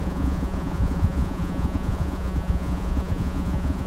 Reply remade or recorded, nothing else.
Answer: remade